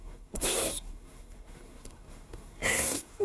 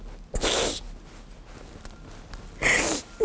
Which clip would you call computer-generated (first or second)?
first